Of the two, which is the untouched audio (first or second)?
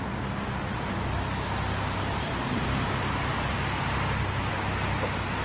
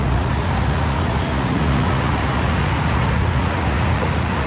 first